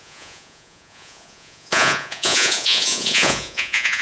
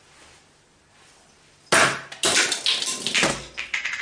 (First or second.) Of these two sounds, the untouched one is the second